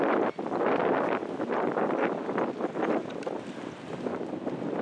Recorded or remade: recorded